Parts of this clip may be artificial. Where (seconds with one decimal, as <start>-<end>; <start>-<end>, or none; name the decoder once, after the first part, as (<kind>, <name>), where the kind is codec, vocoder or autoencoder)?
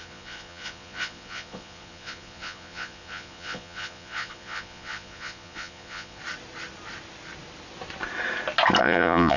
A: 0.0-6.2 (vocoder, Vocos); 8.8-9.4